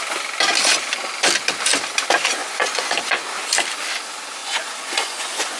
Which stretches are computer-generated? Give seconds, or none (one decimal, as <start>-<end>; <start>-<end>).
2.4-3.2; 4.4-5.6